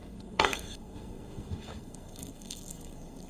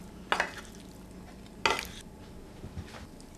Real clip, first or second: second